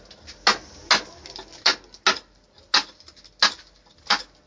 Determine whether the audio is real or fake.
real